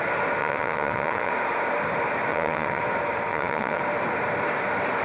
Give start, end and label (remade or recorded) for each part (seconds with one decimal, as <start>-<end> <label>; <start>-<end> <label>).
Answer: 0.0-0.4 recorded; 0.4-1.3 remade; 1.3-2.3 recorded; 2.3-2.8 remade; 2.8-3.3 recorded; 3.3-3.8 remade; 3.8-5.0 recorded